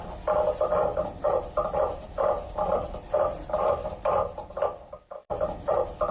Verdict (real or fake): fake